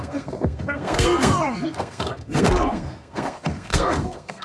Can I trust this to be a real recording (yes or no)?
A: no